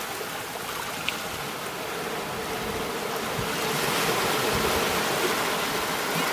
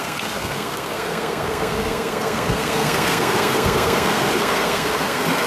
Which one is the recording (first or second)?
first